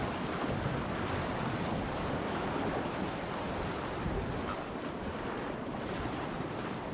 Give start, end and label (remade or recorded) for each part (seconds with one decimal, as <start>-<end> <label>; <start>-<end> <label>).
0.0-6.9 remade